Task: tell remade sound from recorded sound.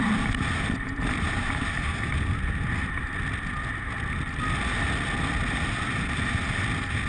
recorded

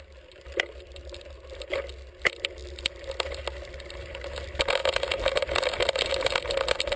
recorded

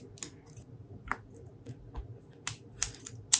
recorded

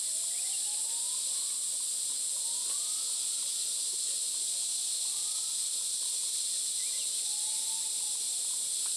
recorded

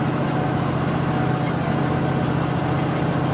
recorded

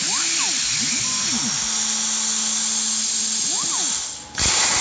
recorded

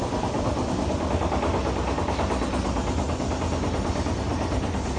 recorded